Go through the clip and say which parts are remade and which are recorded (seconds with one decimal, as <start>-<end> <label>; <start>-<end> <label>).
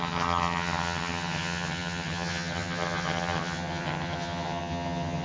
0.0-5.2 remade